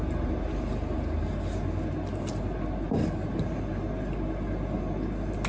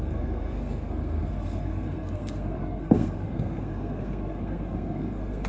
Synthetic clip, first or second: second